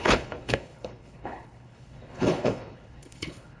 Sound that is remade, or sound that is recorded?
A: remade